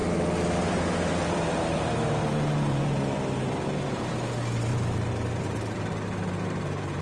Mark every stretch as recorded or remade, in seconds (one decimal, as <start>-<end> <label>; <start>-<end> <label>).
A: 0.0-4.1 remade; 4.1-4.7 recorded; 4.7-7.0 remade